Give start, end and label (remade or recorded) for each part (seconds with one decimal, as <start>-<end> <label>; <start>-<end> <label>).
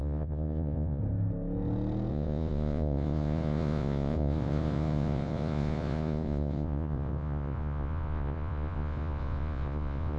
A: 0.0-1.0 remade; 1.0-2.1 recorded; 2.1-10.2 remade